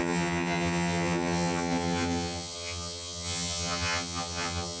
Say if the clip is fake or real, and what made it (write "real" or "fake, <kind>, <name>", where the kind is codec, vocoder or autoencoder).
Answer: fake, vocoder, HiFi-GAN